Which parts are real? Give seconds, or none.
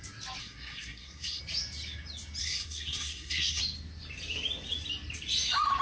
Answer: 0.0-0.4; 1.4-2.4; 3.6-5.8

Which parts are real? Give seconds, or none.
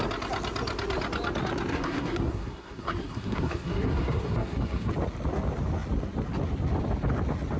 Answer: 0.0-1.7; 4.9-7.6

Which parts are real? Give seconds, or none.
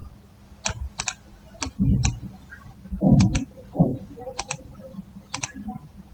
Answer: 0.0-6.1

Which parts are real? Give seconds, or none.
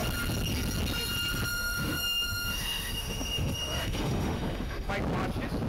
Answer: 0.0-1.5; 4.9-5.7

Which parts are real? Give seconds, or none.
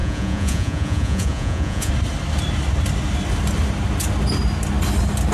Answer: 1.9-5.3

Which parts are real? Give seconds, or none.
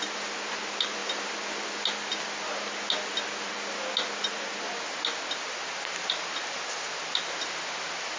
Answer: 0.0-8.2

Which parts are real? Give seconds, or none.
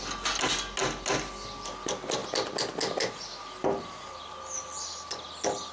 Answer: 0.0-5.7